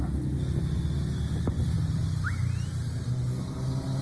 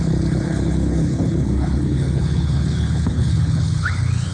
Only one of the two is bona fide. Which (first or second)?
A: first